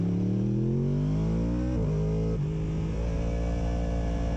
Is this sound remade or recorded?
recorded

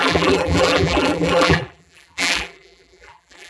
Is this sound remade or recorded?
remade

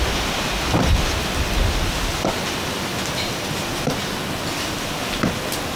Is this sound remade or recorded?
recorded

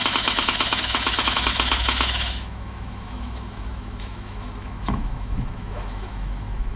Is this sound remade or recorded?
remade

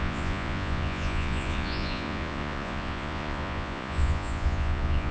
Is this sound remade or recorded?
remade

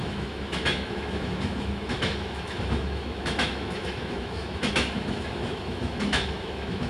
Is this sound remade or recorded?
remade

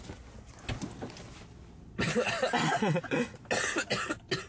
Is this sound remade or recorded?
recorded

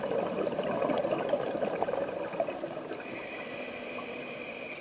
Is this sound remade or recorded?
recorded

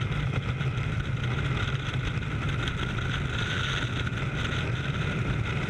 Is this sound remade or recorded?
recorded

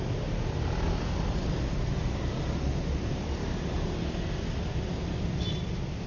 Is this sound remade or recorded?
recorded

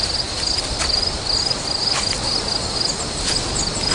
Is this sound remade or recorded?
recorded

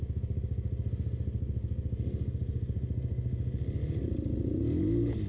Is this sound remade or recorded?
recorded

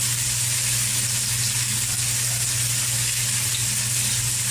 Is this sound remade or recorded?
recorded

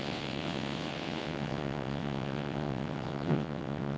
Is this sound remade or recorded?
remade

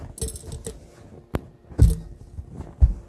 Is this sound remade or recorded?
recorded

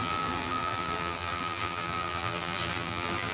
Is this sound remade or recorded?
remade